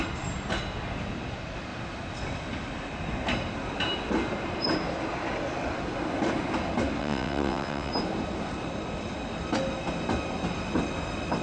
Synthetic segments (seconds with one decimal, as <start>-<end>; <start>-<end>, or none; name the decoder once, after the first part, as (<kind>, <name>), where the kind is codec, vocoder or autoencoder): 7.0-7.9 (vocoder, WaveNeXt)